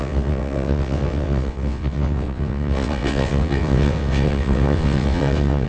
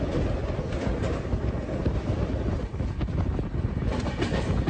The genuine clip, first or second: second